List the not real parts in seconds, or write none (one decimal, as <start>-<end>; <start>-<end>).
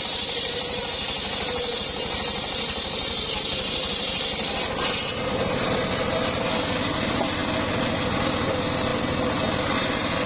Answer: none